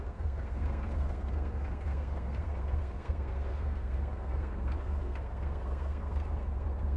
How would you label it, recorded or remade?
remade